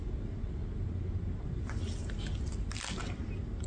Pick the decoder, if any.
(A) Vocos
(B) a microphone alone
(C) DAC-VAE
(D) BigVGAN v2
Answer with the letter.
B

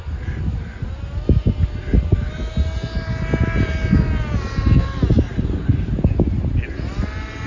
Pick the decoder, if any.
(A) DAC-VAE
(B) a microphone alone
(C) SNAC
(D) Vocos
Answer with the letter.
B